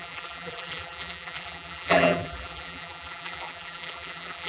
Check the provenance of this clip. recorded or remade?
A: remade